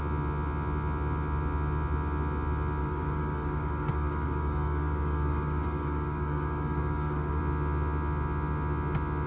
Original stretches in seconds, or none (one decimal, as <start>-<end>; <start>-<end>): 0.0-2.8; 7.4-9.3